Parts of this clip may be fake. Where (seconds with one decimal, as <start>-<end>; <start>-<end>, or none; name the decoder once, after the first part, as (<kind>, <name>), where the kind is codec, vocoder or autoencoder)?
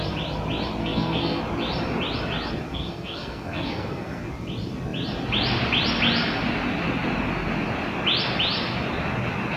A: 0.8-1.4 (codec, SNAC); 2.7-4.2